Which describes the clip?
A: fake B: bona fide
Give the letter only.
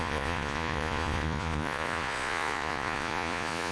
A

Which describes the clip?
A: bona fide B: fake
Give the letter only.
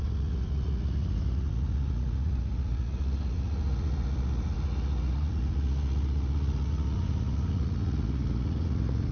B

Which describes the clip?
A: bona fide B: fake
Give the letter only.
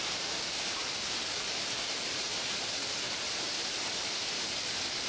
B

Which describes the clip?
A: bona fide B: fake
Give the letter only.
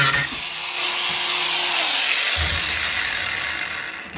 A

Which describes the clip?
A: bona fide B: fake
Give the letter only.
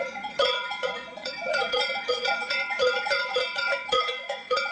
B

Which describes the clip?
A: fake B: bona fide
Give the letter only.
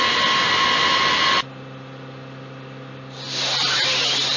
B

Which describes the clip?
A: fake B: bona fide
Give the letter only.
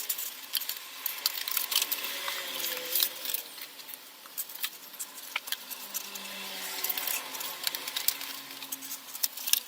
B